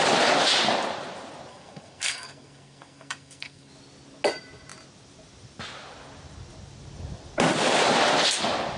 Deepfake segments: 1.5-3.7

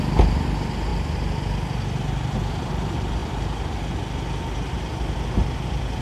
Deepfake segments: none

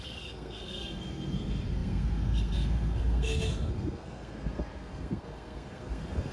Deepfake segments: 0.0-6.3

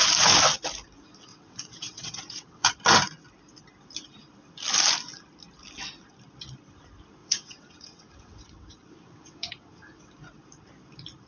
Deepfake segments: 1.3-2.7; 7.2-10.1

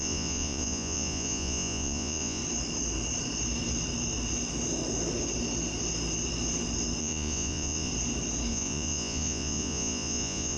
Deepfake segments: 0.0-2.4; 7.0-7.9; 8.5-10.6